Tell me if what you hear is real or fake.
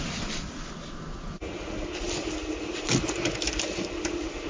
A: real